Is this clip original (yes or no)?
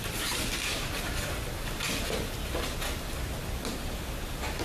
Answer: no